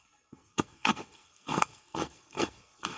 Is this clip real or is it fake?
fake